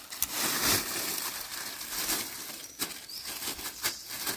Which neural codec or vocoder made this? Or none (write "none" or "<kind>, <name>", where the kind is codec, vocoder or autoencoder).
none